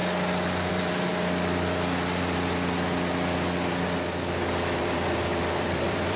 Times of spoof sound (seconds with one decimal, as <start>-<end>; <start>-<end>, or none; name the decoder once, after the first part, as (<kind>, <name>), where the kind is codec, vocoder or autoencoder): 0.7-1.1 (vocoder, BigVGAN v2); 4.8-6.2